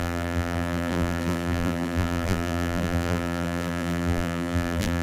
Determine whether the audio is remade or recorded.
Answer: remade